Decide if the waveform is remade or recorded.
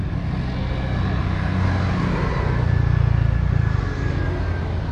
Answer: recorded